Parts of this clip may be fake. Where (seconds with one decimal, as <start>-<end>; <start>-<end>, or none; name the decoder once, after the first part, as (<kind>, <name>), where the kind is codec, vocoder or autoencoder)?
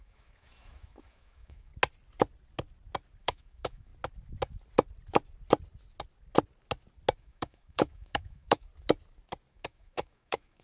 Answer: 0.0-1.7 (autoencoder, DAC-VAE); 3.2-3.9; 7.2-8.7; 9.5-10.6